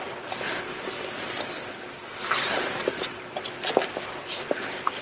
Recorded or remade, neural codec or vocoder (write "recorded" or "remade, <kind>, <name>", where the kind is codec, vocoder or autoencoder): recorded